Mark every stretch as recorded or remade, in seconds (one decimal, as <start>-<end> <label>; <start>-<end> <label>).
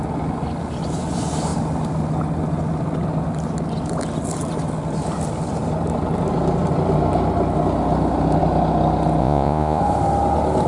0.0-9.2 recorded; 9.2-9.8 remade; 9.8-10.7 recorded